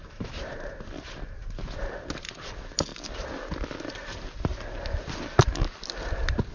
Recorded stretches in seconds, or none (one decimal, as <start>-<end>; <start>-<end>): 0.7-6.5